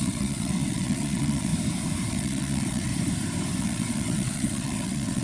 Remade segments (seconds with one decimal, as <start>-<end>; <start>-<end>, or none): 0.0-1.5; 2.1-2.9; 3.6-5.2